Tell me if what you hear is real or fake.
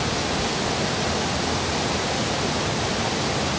real